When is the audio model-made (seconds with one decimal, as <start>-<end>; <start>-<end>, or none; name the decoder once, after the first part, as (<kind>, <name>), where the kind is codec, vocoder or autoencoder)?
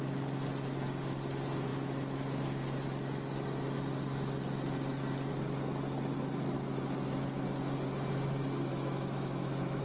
8.7-9.8 (autoencoder, DAC-VAE)